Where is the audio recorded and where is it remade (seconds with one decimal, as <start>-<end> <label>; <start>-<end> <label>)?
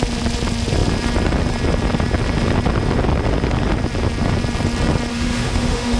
0.0-5.1 recorded; 5.1-6.0 remade